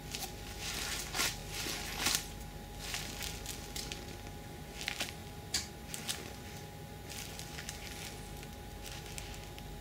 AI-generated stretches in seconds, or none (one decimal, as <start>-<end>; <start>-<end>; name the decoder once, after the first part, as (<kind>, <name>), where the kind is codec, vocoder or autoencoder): none